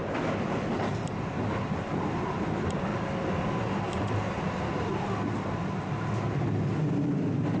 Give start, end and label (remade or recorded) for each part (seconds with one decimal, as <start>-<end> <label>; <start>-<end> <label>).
0.0-7.6 recorded